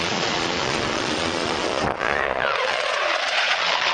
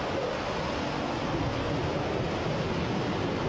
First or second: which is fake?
first